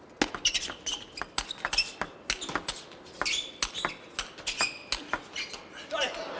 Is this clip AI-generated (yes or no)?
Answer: no